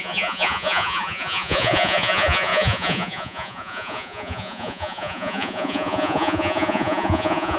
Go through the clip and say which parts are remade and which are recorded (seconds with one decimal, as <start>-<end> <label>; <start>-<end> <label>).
0.0-7.6 remade